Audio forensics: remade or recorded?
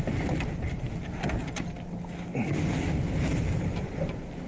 recorded